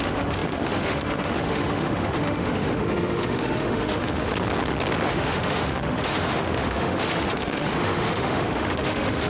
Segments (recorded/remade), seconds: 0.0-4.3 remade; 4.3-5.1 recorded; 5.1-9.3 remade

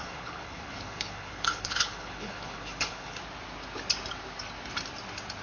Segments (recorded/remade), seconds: 0.0-3.2 remade; 3.2-5.4 recorded